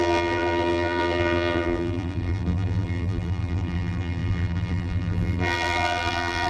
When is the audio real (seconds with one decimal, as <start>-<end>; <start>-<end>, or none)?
none